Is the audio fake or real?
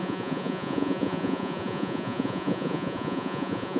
fake